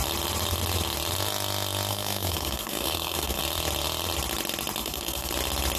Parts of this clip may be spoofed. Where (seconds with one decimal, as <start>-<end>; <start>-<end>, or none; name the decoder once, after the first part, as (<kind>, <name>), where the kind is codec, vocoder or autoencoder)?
1.9-3.4 (codec, SNAC); 4.8-5.3